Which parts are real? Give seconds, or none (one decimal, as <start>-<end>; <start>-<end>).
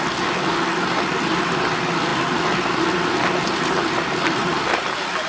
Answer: 0.0-5.3